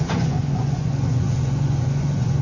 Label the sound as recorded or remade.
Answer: remade